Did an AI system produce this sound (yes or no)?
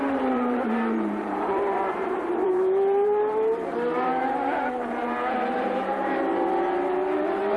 yes